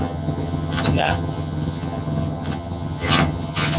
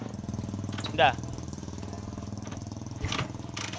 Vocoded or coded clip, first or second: first